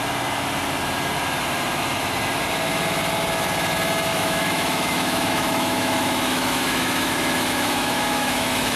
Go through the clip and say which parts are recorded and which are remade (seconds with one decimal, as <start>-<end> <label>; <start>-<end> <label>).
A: 0.0-4.1 recorded; 4.1-8.8 remade